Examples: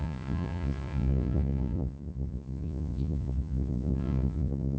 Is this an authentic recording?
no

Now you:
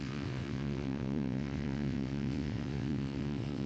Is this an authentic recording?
no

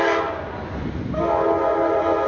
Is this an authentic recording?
yes